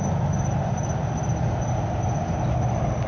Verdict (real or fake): real